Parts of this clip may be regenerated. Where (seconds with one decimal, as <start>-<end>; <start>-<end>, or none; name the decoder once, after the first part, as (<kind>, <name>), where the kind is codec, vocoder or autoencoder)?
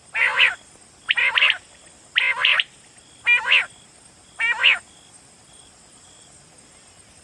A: none